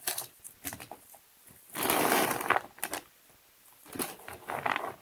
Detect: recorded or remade recorded